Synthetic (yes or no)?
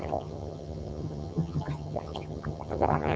yes